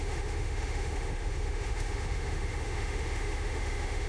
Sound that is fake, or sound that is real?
fake